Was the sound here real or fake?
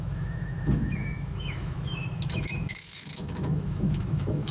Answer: fake